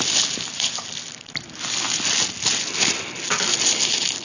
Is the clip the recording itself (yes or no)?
yes